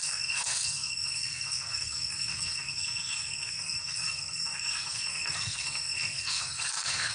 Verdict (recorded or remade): remade